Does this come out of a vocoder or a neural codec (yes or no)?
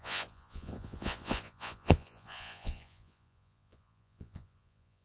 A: yes